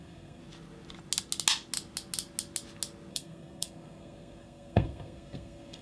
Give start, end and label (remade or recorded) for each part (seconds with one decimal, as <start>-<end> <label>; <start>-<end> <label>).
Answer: 0.0-0.4 remade; 0.4-3.1 recorded; 3.1-5.8 remade